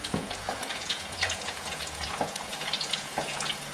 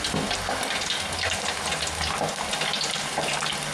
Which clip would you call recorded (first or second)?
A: second